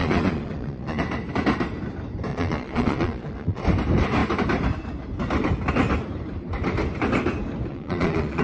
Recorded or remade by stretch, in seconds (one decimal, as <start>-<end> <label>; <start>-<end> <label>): 0.0-1.0 remade; 1.0-2.3 recorded; 2.3-3.6 remade; 3.6-7.7 recorded; 7.7-8.4 remade